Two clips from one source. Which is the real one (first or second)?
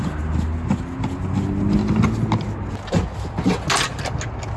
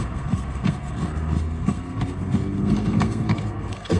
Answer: first